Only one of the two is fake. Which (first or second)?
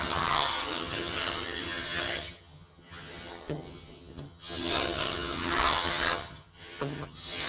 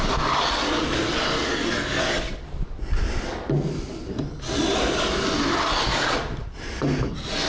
first